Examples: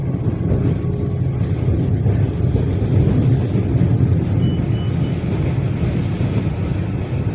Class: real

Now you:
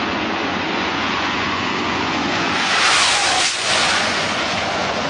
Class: fake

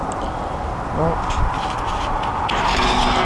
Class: real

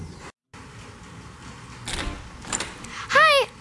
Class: real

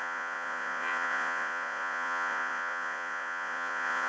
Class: fake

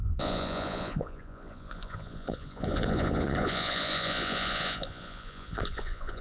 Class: fake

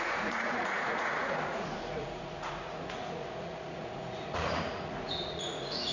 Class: fake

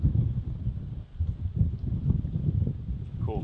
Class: real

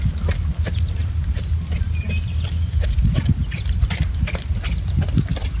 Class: real